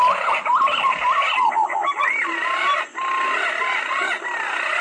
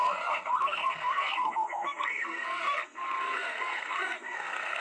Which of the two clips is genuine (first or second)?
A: first